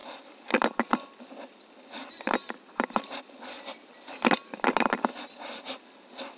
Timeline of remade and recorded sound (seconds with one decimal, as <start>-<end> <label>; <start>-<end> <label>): 0.0-0.9 remade; 0.9-2.0 recorded; 2.0-4.7 remade; 4.7-6.4 recorded